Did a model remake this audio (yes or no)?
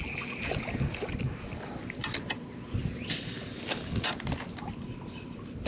no